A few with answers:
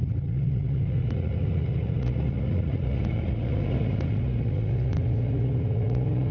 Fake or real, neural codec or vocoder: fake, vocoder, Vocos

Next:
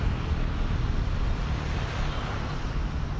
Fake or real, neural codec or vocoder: real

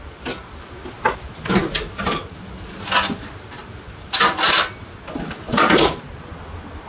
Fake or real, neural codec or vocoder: real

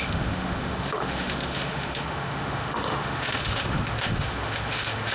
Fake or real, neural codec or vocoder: fake, autoencoder, DAC-VAE